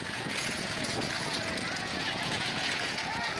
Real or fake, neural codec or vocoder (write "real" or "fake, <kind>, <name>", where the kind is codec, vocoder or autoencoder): fake, vocoder, Vocos